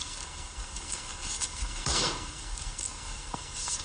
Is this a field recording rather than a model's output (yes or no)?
no